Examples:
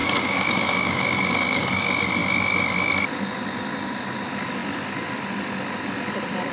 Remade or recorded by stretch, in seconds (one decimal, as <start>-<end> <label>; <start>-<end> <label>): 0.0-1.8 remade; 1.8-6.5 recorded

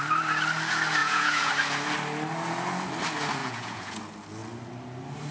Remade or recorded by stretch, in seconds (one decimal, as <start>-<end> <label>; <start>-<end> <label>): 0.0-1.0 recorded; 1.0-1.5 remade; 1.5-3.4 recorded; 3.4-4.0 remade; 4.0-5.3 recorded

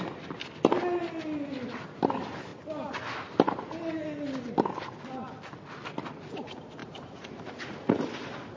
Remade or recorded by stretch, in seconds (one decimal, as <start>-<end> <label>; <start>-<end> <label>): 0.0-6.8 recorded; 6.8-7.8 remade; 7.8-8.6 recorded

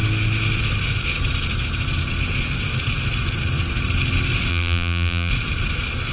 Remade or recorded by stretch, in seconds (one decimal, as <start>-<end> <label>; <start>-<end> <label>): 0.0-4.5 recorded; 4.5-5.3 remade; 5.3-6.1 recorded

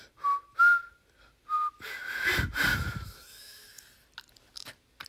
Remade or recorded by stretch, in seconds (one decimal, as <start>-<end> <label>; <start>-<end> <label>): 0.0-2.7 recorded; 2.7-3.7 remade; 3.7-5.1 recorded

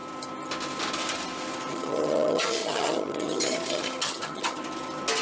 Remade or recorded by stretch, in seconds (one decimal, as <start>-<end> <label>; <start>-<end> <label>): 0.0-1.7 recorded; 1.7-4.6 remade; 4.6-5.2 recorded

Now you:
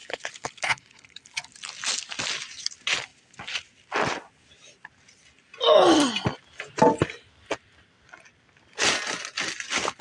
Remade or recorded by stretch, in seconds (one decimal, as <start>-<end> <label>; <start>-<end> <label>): 0.0-1.2 remade; 1.2-10.0 recorded

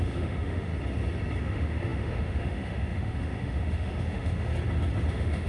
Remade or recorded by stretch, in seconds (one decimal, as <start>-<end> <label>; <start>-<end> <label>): 0.0-0.7 remade; 0.7-1.4 recorded; 1.4-4.5 remade; 4.5-5.1 recorded; 5.1-5.5 remade